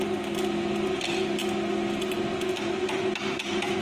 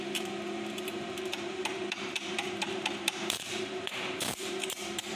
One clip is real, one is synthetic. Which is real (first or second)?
first